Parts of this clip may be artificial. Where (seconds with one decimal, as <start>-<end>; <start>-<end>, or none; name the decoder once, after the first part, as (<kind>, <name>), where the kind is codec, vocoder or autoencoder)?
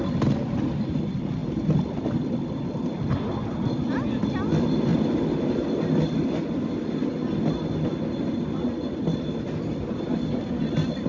none